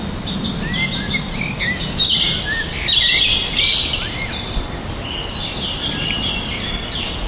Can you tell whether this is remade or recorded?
recorded